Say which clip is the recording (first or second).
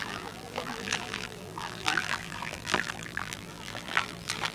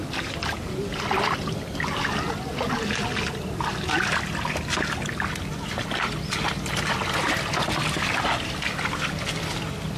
second